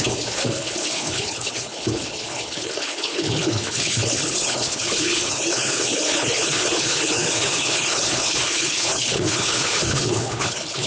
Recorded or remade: remade